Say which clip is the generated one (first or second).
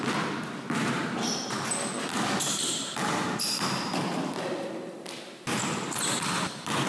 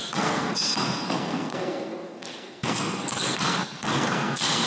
second